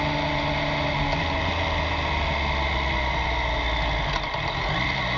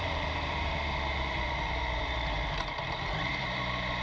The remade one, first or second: second